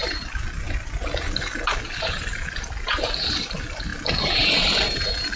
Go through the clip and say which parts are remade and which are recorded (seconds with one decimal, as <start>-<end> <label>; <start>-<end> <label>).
0.0-5.4 recorded